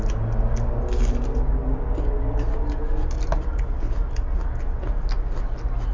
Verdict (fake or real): real